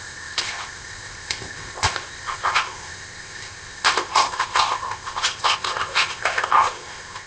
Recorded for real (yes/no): no